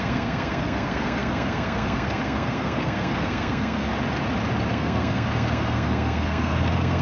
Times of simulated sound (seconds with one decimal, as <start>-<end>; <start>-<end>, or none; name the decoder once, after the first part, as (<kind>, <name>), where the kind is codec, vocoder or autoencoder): 0.0-3.9 (codec, SNAC); 4.7-7.0